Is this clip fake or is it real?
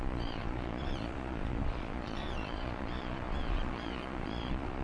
fake